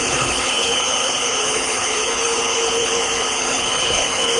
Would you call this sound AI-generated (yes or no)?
yes